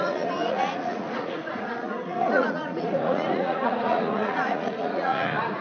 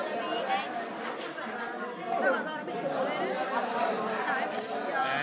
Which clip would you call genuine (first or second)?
second